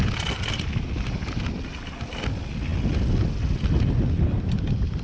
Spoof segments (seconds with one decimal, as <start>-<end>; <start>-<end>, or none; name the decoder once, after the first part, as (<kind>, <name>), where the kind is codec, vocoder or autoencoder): none